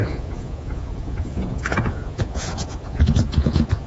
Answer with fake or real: fake